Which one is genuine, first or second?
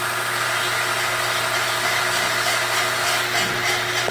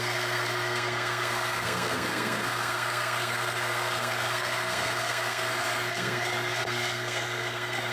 first